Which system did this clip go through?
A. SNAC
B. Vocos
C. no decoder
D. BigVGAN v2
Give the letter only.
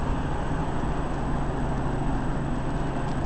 C